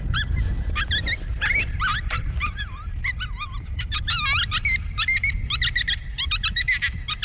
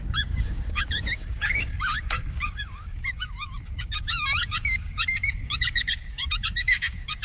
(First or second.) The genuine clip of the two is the first